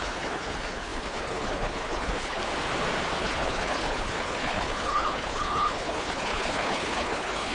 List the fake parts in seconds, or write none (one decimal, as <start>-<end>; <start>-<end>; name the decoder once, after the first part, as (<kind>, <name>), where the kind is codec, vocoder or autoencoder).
0.0-2.4 (codec, HILCodec); 3.2-7.5